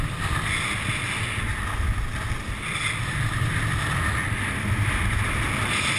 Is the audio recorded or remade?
recorded